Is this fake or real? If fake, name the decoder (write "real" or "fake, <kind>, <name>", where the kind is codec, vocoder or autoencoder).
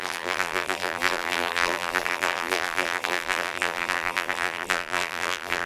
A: fake, vocoder, BigVGAN v2